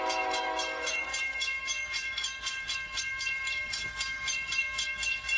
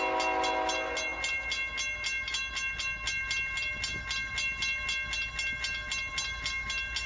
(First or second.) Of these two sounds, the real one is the second